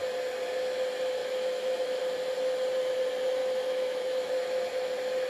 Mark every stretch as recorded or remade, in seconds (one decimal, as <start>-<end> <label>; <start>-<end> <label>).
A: 0.0-1.2 recorded; 1.2-2.0 remade; 2.0-3.4 recorded; 3.4-4.3 remade; 4.3-5.3 recorded